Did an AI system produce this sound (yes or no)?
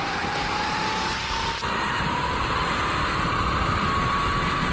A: no